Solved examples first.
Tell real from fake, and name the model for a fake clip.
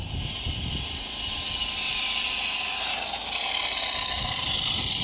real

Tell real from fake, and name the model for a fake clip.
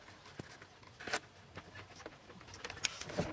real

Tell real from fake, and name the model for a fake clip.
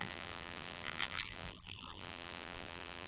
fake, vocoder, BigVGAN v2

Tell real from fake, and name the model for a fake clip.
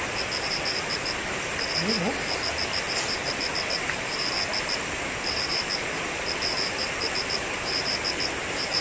real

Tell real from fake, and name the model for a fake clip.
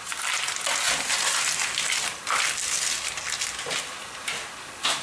real